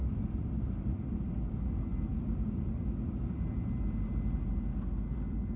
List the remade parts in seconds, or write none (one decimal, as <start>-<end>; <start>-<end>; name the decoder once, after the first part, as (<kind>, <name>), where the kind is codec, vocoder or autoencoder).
none